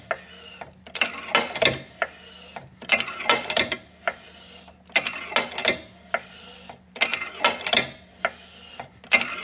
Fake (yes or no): no